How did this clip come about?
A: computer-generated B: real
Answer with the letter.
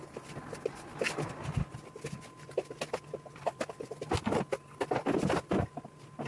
B